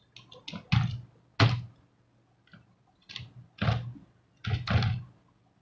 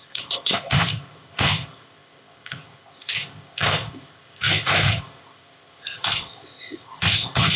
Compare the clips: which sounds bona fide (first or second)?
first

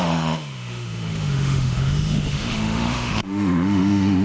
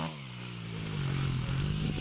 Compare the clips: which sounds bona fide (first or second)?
second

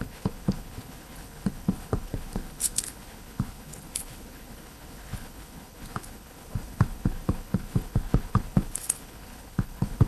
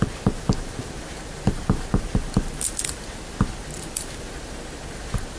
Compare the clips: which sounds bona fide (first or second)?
second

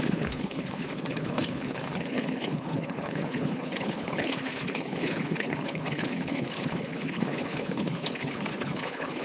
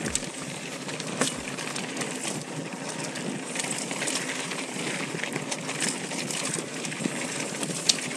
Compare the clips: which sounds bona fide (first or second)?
second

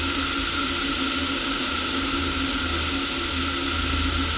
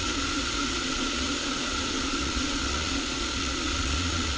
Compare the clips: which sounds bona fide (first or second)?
first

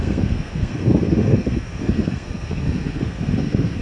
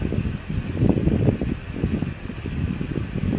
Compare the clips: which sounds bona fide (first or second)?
second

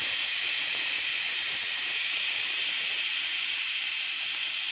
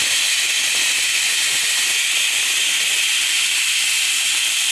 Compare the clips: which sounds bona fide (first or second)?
second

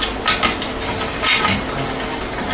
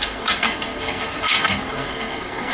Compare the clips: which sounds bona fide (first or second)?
first